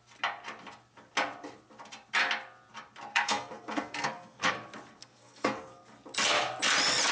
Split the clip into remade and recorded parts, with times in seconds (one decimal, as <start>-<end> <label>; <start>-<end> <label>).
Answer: 0.0-3.1 recorded; 3.1-4.5 remade; 4.5-5.0 recorded; 5.0-5.8 remade; 5.8-7.1 recorded